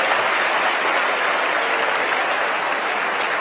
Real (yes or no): yes